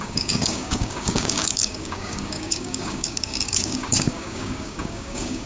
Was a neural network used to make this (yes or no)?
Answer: yes